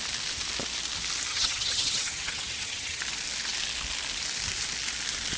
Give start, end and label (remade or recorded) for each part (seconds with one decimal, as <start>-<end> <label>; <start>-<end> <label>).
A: 0.0-1.3 recorded; 1.3-3.0 remade; 3.0-5.4 recorded